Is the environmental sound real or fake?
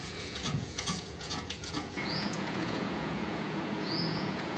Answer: fake